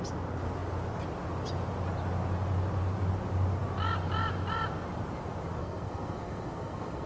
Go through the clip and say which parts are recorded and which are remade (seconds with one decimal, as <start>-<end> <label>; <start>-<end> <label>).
0.0-5.6 recorded; 5.6-7.1 remade